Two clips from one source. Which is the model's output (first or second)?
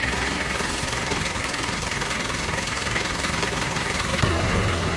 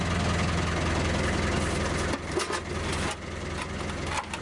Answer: first